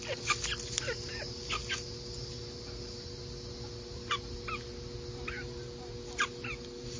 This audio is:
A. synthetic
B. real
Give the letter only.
B